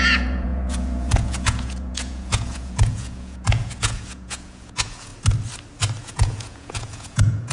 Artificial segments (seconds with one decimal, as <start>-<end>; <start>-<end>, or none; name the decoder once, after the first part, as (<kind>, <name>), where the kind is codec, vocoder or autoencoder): 0.0-5.1 (vocoder, Vocos); 6.0-7.5